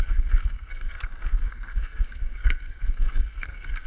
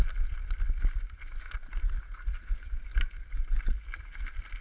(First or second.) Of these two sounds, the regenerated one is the first